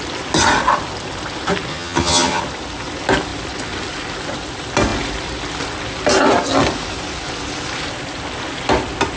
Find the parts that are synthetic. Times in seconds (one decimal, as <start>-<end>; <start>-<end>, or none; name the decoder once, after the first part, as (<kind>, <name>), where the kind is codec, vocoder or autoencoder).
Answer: 1.7-2.4 (vocoder, HiFi-GAN)

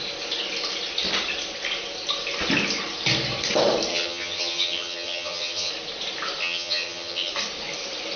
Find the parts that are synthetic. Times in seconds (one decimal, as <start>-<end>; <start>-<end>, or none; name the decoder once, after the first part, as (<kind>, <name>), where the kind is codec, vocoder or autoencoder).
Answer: 3.9-5.7 (vocoder, HiFi-GAN); 6.4-7.3

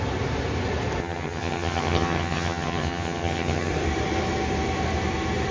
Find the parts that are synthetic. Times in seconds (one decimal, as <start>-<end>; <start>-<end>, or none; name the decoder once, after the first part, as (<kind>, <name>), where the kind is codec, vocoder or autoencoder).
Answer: 1.0-3.7 (vocoder, HiFi-GAN)

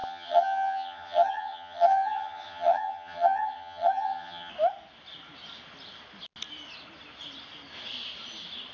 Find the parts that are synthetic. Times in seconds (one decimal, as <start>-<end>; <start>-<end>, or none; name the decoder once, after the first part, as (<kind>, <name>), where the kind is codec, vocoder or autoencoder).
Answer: 0.0-4.5 (vocoder, HiFi-GAN)